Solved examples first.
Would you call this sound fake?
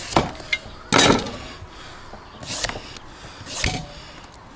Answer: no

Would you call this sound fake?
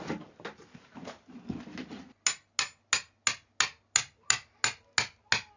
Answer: no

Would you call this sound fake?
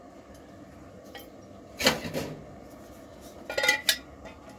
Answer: no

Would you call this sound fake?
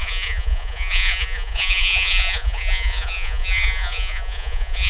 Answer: yes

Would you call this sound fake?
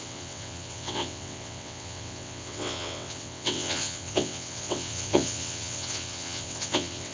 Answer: yes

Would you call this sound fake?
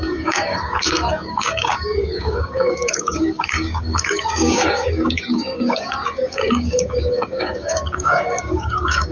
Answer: yes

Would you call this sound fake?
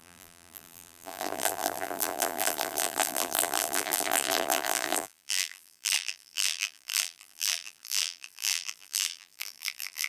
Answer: yes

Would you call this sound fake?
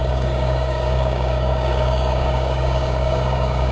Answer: yes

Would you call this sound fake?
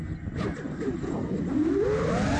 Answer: no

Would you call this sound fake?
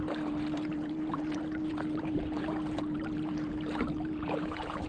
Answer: yes